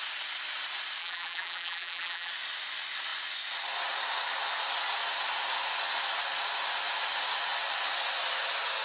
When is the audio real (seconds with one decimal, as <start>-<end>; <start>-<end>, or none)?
0.0-1.0; 2.3-8.8